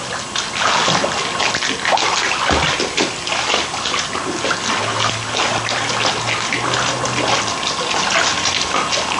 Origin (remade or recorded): recorded